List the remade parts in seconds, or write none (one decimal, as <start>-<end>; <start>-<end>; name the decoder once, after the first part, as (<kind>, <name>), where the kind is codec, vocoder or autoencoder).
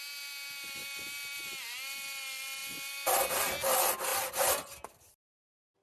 none